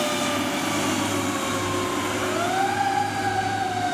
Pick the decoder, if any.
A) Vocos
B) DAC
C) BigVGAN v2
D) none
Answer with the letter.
D